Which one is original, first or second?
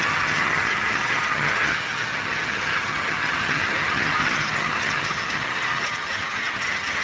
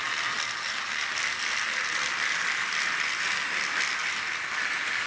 second